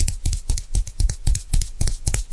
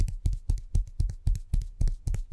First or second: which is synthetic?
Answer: first